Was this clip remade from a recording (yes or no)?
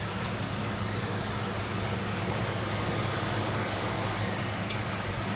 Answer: yes